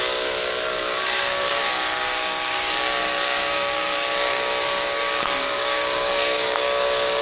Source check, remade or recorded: remade